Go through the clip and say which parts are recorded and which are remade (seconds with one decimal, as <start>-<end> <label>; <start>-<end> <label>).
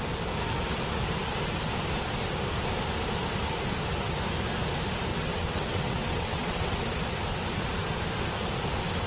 0.0-5.1 recorded; 5.1-6.9 remade; 6.9-9.1 recorded